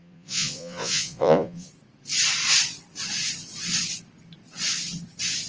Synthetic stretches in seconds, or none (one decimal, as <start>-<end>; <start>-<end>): 0.0-1.7

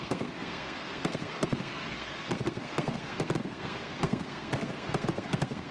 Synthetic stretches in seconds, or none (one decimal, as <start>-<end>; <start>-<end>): 0.0-5.7

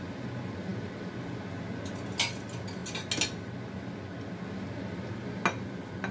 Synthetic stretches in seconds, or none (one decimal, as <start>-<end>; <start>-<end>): none

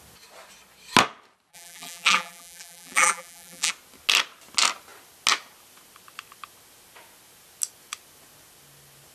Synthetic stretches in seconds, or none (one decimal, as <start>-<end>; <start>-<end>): 1.5-3.7